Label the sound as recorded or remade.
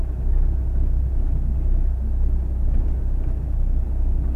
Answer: recorded